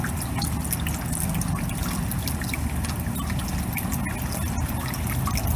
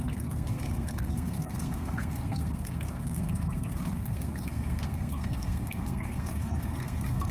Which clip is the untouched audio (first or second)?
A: first